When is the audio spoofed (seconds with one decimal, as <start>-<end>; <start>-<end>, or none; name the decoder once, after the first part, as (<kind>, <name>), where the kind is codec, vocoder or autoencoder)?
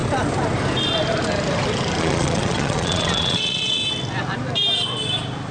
2.0-3.8 (vocoder, Vocos)